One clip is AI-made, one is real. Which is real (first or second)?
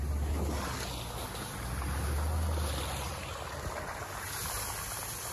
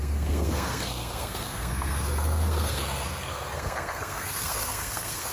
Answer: first